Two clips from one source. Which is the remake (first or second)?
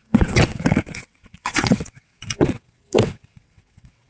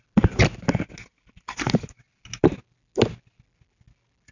first